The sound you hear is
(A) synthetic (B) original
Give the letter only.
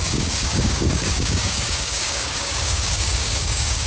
A